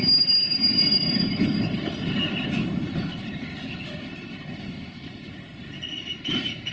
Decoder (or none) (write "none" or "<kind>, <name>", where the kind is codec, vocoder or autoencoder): vocoder, BigVGAN v2